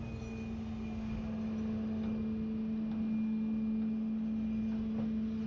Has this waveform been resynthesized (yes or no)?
no